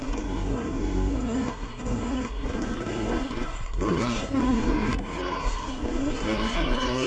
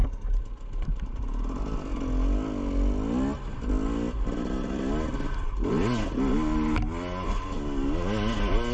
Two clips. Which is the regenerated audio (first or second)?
first